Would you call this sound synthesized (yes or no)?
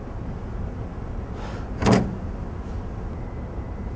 no